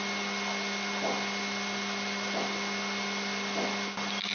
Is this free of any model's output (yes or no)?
yes